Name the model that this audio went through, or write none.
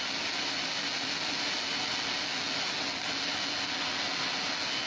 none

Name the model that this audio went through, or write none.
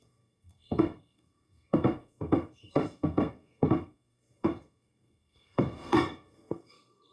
codec, SNAC